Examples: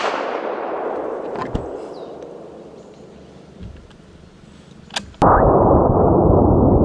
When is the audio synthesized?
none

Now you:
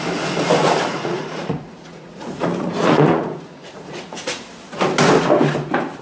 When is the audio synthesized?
0.9-4.5 (vocoder, Vocos)

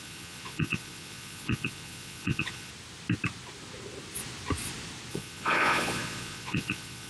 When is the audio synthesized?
0.0-2.7 (vocoder, Vocos); 5.1-7.1

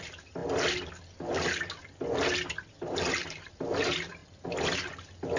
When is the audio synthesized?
none

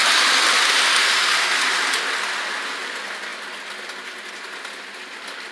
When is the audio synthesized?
none

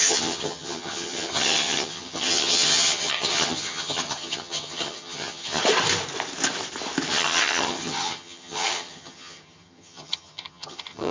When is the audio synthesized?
0.0-5.6 (vocoder, HiFi-GAN); 7.1-11.1

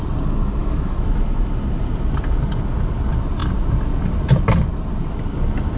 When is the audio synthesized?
0.6-1.5 (autoencoder, DAC-VAE)

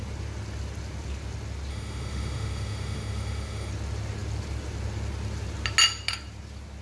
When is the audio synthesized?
1.7-3.7 (autoencoder, DAC-VAE)